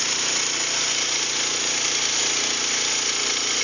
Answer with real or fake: real